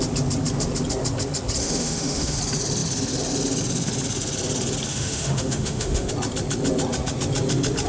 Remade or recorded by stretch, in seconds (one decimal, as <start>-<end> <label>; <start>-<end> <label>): 0.0-1.6 recorded; 1.6-2.4 remade; 2.4-4.9 recorded; 4.9-6.1 remade; 6.1-7.9 recorded